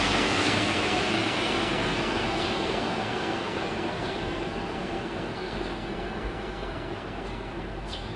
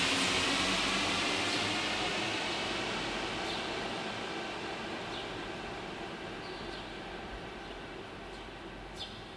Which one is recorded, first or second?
second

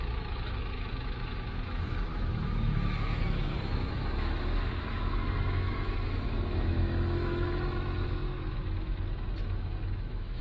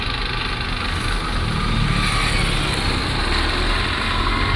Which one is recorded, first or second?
second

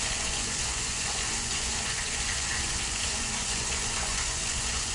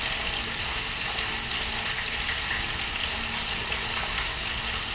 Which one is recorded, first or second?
second